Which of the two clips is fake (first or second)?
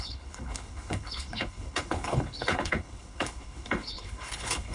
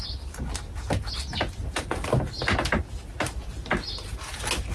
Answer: first